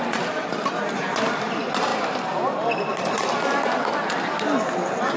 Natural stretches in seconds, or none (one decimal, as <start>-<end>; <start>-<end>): 0.0-5.2